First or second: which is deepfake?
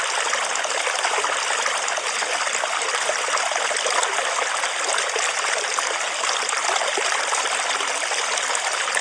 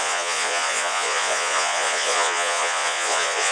second